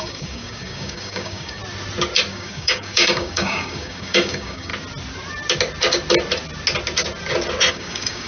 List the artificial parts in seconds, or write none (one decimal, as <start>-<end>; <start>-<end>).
0.0-1.6; 2.3-4.7; 7.7-8.3